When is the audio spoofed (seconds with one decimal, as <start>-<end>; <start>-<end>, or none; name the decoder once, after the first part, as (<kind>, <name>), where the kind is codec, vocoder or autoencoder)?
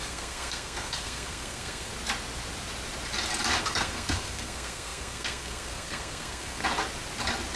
0.0-1.9 (codec, SNAC); 3.6-6.6